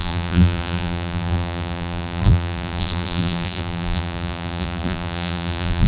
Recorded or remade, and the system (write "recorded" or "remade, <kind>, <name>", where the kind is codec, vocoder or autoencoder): remade, vocoder, BigVGAN v2